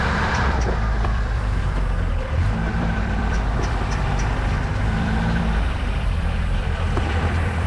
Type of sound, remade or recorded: remade